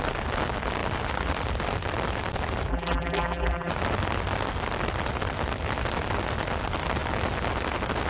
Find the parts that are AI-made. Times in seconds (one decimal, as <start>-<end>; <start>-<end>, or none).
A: 2.7-3.7